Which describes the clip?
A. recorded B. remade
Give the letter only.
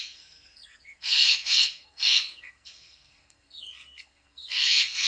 B